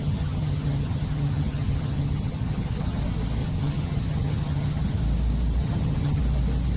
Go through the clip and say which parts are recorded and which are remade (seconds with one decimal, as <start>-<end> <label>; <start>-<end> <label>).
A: 0.0-3.0 remade; 3.0-3.4 recorded; 3.4-5.0 remade; 5.0-5.6 recorded; 5.6-6.2 remade; 6.2-6.8 recorded

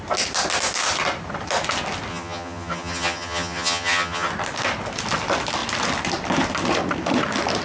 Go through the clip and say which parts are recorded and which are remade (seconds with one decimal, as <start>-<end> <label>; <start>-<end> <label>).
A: 0.0-2.1 recorded; 2.1-4.3 remade; 4.3-7.6 recorded

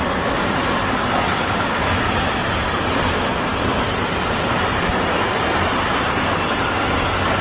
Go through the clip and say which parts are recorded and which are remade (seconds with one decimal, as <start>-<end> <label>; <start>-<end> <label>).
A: 0.0-7.4 recorded

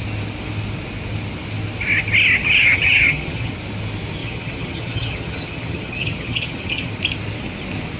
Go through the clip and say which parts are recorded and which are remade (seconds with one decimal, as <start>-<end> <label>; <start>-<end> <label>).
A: 0.0-2.4 recorded; 2.4-3.5 remade; 3.5-4.2 recorded; 4.2-6.9 remade; 6.9-8.0 recorded

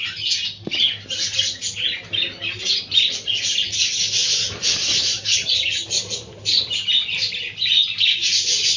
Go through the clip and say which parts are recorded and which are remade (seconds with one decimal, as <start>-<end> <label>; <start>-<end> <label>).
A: 0.0-8.8 recorded

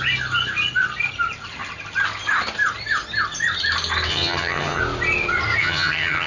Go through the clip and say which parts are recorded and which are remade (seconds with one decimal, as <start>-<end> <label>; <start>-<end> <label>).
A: 0.0-4.1 recorded; 4.1-4.8 remade; 4.8-5.6 recorded; 5.6-6.3 remade

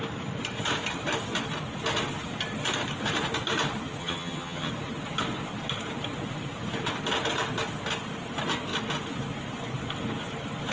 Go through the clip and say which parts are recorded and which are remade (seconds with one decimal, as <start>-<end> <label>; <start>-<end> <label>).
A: 0.0-4.0 recorded; 4.0-4.7 remade; 4.7-10.7 recorded